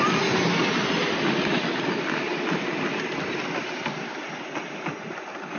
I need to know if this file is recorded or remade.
recorded